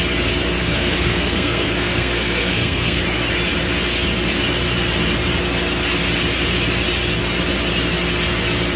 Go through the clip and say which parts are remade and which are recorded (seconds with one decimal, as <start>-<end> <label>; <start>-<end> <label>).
0.0-0.6 recorded; 0.6-3.0 remade; 3.0-8.8 recorded